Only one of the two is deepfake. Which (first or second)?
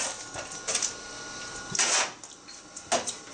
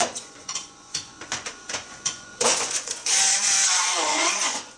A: second